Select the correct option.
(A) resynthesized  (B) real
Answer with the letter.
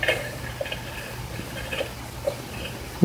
A